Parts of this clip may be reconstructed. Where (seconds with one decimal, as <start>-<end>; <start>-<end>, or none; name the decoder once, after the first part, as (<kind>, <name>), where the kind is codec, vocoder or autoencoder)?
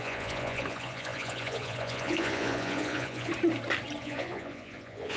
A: 0.0-3.3 (vocoder, Vocos); 4.0-5.2